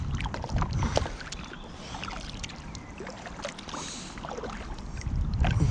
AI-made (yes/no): no